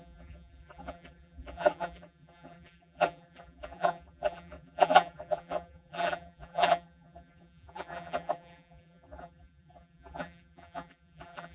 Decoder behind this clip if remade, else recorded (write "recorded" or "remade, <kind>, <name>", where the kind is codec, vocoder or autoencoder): remade, vocoder, BigVGAN v2